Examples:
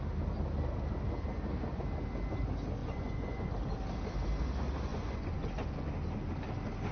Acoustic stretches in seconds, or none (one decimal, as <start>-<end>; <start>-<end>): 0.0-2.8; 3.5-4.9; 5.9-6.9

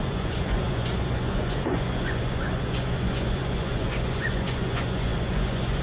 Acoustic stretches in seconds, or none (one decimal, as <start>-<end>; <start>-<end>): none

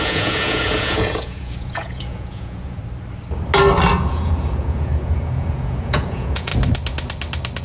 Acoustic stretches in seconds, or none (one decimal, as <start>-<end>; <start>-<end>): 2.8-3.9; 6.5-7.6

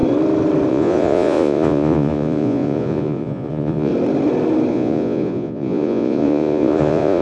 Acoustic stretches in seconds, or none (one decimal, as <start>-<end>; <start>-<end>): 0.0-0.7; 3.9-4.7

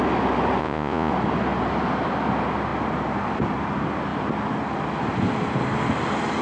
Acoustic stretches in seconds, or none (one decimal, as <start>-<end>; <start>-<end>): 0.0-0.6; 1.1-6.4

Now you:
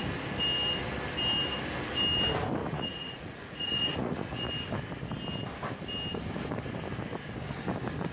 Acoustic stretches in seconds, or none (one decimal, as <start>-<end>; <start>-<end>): 0.0-2.6; 4.5-8.1

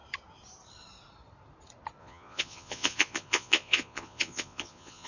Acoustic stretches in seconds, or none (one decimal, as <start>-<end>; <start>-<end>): 0.0-2.0